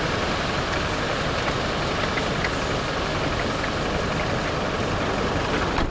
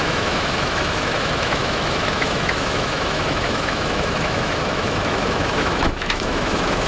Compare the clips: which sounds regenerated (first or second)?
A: second